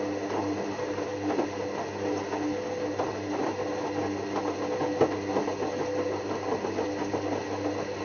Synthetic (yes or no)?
no